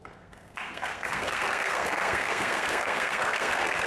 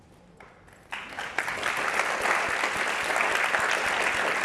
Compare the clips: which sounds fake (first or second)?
first